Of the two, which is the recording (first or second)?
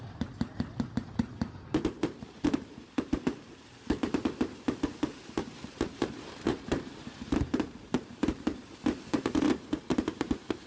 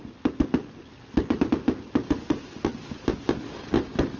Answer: second